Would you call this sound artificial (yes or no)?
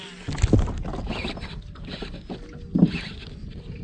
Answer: no